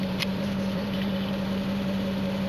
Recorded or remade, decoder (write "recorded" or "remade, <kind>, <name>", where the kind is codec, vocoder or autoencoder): remade, vocoder, BigVGAN v2